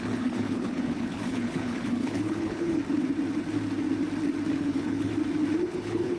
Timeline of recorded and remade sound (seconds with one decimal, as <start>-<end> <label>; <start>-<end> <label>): 0.0-2.8 remade; 2.8-4.5 recorded; 4.5-5.1 remade; 5.1-5.6 recorded; 5.6-6.2 remade